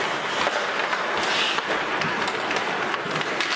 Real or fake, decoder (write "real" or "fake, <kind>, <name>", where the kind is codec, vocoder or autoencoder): real